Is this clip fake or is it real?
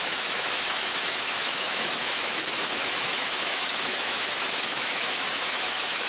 fake